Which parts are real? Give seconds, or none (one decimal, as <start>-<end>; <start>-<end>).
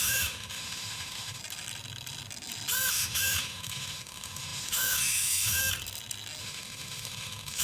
1.4-2.9; 5.6-6.4